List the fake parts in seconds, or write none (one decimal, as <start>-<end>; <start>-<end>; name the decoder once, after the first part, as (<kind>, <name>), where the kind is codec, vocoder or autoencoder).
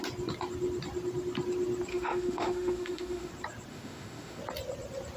1.9-3.3 (autoencoder, DAC-VAE); 3.7-4.4